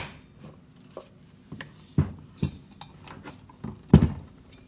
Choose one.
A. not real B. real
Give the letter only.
B